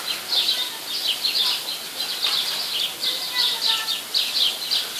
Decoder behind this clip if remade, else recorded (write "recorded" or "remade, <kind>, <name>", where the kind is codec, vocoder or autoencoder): recorded